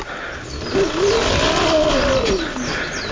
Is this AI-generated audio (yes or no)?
no